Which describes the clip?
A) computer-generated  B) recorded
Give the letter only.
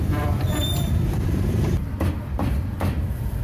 A